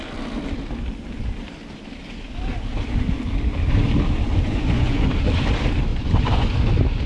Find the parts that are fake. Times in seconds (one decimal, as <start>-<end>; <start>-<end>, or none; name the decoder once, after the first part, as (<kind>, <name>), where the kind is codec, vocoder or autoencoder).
4.4-5.1 (vocoder, Vocos); 5.9-6.5

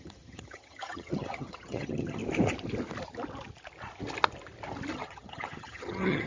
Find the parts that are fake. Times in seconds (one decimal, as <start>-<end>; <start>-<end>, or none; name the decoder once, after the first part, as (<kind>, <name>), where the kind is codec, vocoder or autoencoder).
0.0-2.2 (vocoder, HiFi-GAN); 4.9-6.3